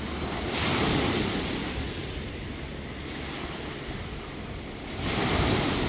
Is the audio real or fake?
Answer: real